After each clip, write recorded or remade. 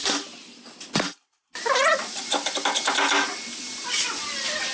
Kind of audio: recorded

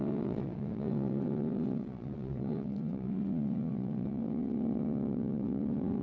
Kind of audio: remade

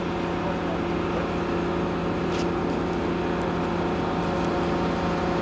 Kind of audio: recorded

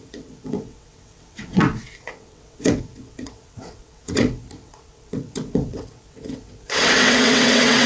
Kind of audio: remade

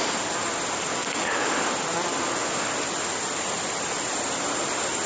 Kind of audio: recorded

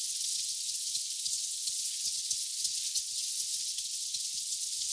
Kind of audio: remade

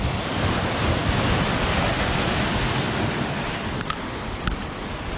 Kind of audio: recorded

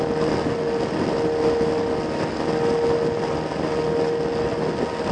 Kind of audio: recorded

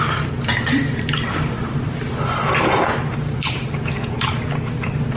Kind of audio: recorded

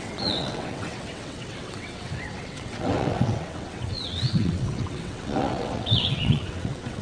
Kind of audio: remade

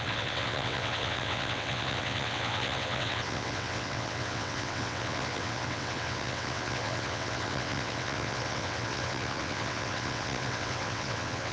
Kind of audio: remade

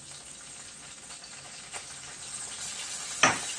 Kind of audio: recorded